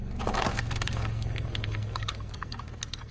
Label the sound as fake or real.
fake